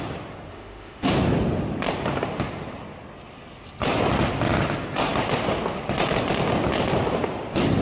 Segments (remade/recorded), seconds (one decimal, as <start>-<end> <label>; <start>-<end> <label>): 0.0-0.5 recorded; 0.5-1.1 remade; 1.1-7.8 recorded